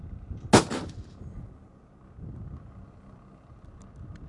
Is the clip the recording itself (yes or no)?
yes